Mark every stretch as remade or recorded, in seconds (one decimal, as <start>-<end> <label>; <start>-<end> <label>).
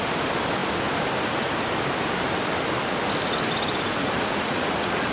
0.0-4.0 recorded; 4.0-5.1 remade